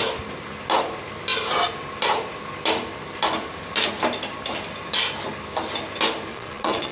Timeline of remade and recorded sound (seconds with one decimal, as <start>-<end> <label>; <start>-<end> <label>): 0.0-6.3 recorded; 6.3-6.9 remade